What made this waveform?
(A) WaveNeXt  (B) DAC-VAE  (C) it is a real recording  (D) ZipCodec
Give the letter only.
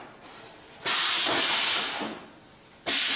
C